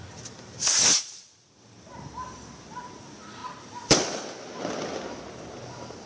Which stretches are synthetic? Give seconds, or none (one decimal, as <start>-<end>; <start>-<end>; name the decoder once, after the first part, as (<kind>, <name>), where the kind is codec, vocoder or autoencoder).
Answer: none